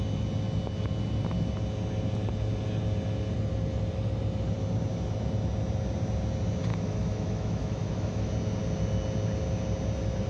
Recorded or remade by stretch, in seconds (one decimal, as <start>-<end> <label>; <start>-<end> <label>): 0.0-6.7 recorded; 6.7-8.3 remade; 8.3-10.3 recorded